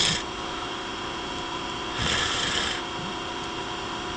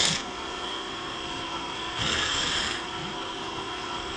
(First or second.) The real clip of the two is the first